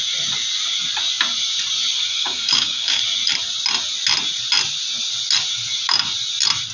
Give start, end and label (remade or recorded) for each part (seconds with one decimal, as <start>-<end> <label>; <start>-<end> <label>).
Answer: 0.0-2.1 recorded; 2.1-3.0 remade; 3.0-6.7 recorded